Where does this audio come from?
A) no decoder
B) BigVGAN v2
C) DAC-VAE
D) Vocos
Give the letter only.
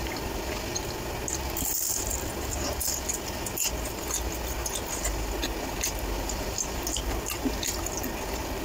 A